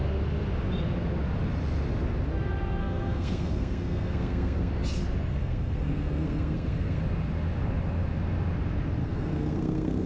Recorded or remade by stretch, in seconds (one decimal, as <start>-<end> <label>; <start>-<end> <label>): 0.0-2.8 recorded; 2.8-4.7 remade; 4.7-5.3 recorded; 5.3-7.0 remade; 7.0-9.0 recorded; 9.0-10.1 remade